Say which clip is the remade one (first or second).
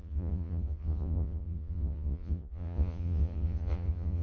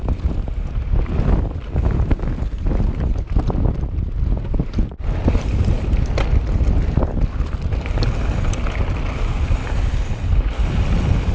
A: first